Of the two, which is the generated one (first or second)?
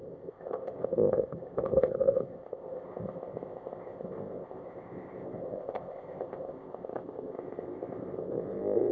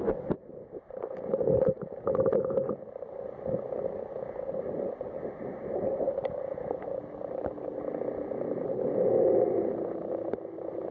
first